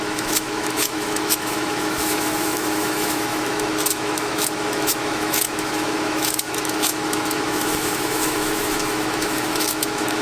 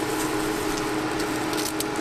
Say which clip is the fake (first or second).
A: first